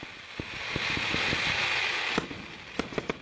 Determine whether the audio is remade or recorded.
recorded